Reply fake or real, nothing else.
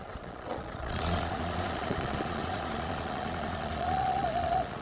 fake